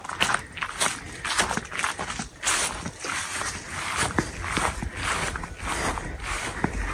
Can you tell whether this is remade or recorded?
recorded